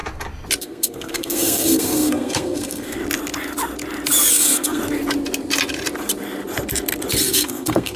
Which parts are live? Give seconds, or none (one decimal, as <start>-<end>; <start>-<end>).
0.0-0.6; 3.0-4.3; 4.8-7.2